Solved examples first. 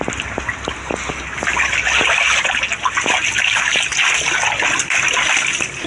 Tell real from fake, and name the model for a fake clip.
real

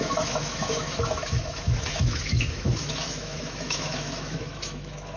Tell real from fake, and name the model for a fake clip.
fake, autoencoder, DAC-VAE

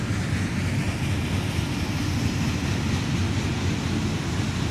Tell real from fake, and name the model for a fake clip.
real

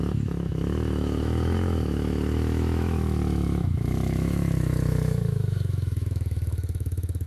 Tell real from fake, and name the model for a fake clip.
fake, autoencoder, DAC-VAE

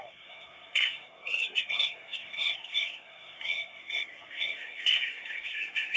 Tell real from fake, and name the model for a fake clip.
fake, codec, SNAC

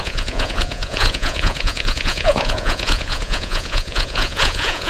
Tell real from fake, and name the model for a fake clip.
fake, vocoder, Vocos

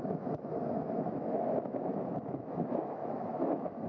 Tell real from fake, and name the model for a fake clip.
fake, autoencoder, DAC-VAE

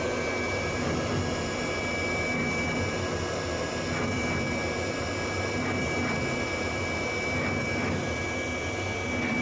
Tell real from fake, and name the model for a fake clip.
real